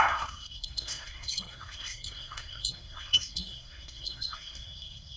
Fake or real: fake